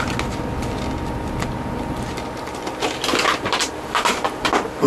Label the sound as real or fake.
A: real